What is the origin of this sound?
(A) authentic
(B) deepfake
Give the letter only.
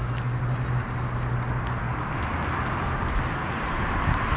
A